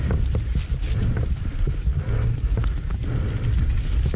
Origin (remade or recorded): recorded